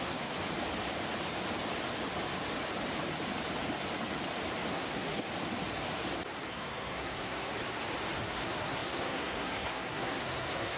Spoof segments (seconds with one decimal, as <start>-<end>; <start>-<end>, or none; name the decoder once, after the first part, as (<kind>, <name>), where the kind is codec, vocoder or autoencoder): 0.0-0.4 (codec, SNAC); 4.7-5.3; 6.5-7.5; 8.2-10.8